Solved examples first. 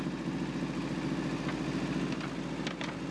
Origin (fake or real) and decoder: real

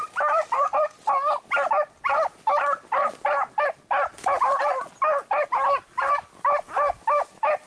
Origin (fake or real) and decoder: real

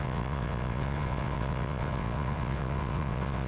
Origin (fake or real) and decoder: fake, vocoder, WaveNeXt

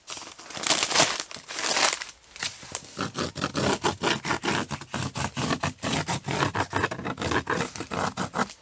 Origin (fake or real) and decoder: real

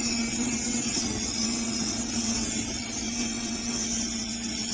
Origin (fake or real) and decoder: fake, vocoder, WaveNeXt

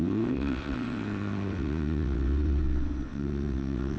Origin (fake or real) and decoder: fake, vocoder, WaveNeXt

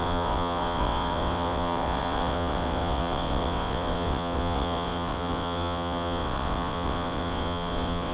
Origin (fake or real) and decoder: fake, vocoder, WaveNeXt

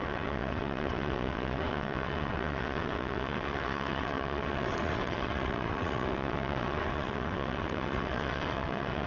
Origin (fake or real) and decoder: fake, vocoder, WaveNeXt